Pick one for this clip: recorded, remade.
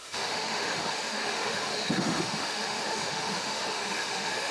remade